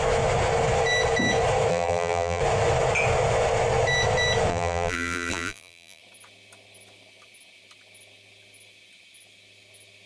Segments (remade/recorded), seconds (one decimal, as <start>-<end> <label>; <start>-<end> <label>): 0.0-1.7 recorded; 1.7-2.4 remade; 2.4-4.5 recorded; 4.5-6.0 remade; 6.0-10.1 recorded